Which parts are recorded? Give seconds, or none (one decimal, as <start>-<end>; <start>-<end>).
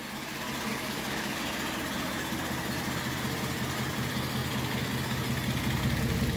0.0-0.7; 1.4-6.4